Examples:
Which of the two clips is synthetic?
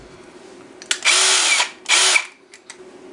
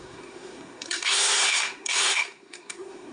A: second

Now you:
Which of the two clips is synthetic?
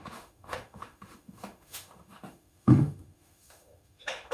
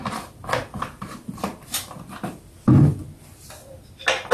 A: first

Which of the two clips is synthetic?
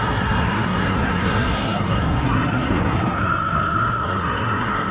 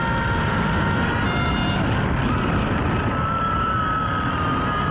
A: first